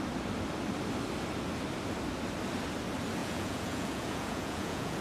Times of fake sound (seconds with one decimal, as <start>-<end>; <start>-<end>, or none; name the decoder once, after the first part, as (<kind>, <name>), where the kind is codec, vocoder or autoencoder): 3.2-5.0 (vocoder, Vocos)